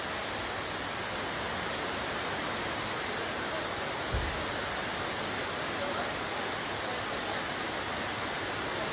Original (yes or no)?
yes